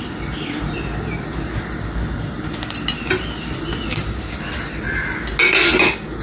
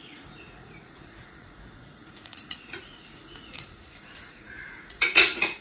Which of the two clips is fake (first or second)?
second